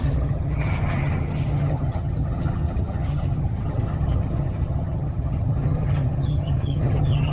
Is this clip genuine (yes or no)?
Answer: no